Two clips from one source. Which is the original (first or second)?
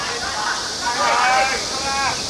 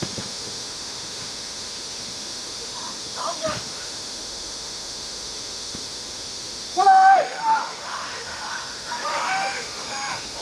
first